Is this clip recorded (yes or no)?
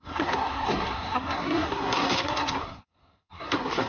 no